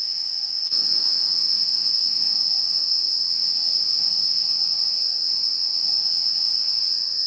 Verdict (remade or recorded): remade